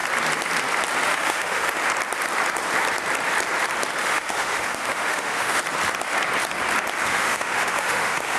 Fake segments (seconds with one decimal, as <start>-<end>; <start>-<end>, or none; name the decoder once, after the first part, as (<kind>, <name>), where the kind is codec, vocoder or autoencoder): 1.1-1.7 (autoencoder, DAC-VAE); 4.0-5.6; 7.1-8.4